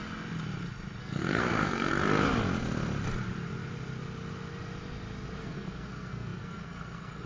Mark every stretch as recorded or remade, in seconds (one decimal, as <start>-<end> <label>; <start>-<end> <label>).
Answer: 0.0-1.0 recorded; 1.0-1.9 remade; 1.9-5.4 recorded; 5.4-7.3 remade